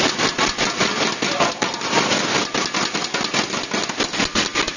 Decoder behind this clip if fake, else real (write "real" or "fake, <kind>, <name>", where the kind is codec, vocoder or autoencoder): real